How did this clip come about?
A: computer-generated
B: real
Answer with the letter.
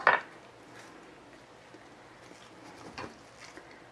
B